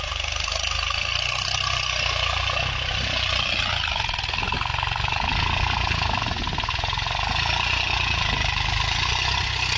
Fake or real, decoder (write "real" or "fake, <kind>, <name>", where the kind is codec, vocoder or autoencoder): real